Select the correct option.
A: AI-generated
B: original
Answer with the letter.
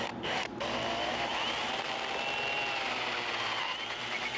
B